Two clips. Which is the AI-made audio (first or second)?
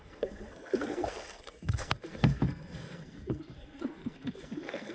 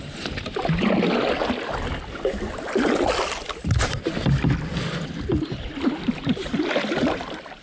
first